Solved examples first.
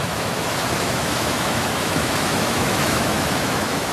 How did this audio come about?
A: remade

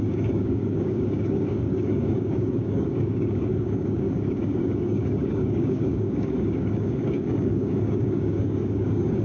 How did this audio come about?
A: remade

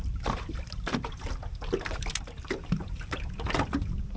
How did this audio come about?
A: recorded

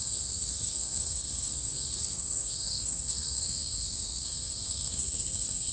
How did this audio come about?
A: remade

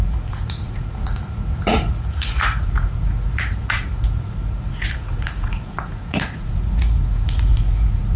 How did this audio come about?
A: remade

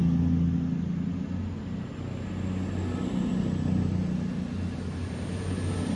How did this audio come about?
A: recorded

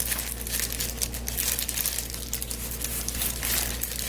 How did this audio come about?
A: recorded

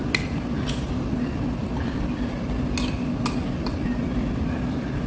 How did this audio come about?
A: recorded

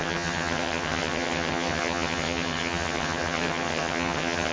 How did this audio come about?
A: remade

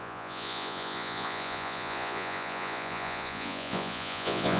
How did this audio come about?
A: remade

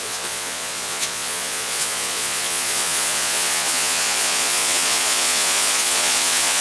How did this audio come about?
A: remade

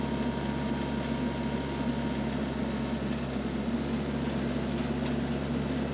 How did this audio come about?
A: recorded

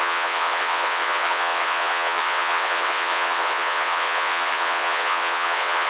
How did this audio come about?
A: remade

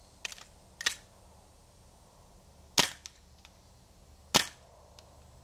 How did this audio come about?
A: recorded